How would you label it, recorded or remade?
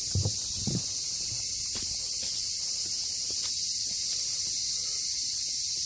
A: recorded